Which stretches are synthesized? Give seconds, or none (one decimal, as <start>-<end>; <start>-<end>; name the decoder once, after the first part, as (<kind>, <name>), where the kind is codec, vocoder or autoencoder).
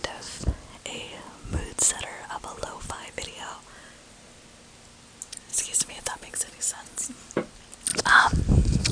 5.5-7.0 (vocoder, Vocos)